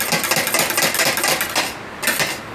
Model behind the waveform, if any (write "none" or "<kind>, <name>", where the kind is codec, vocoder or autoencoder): none